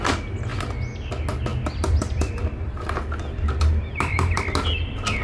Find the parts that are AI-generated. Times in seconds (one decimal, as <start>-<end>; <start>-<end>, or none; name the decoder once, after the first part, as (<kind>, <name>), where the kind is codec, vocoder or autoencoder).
1.5-4.4 (vocoder, BigVGAN v2)